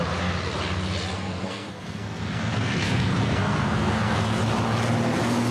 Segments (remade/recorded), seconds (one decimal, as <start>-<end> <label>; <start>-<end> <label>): 0.0-1.1 recorded; 1.1-4.4 remade; 4.4-5.5 recorded